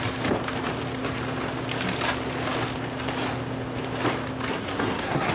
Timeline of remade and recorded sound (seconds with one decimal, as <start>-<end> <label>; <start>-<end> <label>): 0.0-4.5 recorded; 4.5-5.3 remade